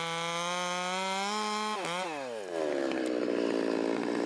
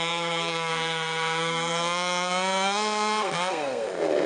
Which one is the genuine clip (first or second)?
first